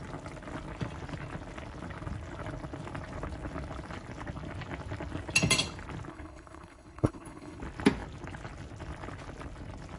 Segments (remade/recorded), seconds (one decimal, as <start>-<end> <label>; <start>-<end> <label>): 0.0-6.1 recorded; 6.1-7.6 remade; 7.6-10.0 recorded